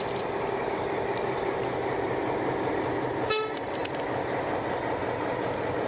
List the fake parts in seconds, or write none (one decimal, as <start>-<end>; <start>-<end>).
3.8-4.6